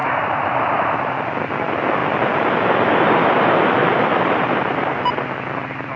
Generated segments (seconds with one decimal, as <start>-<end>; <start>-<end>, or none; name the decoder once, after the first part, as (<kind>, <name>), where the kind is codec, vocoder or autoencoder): 0.0-1.1 (vocoder, BigVGAN v2); 3.8-5.3